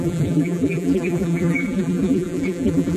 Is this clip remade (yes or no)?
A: yes